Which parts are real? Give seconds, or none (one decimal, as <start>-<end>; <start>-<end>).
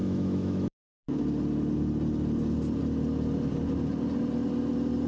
1.2-5.1